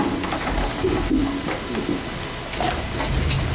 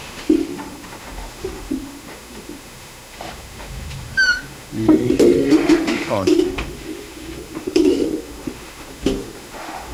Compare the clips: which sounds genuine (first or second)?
first